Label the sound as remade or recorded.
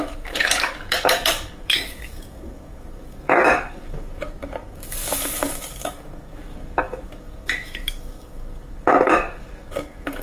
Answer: remade